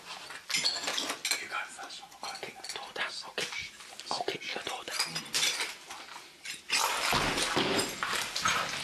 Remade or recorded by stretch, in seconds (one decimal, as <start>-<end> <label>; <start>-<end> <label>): 0.0-8.8 recorded